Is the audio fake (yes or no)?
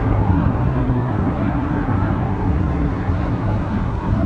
yes